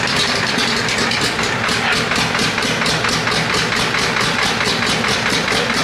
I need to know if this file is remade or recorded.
recorded